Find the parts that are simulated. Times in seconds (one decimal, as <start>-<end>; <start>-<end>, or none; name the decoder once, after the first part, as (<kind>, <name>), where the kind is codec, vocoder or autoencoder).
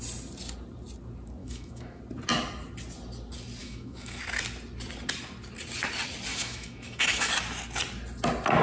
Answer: 1.4-2.0 (autoencoder, DAC-VAE); 3.6-4.2; 6.3-7.3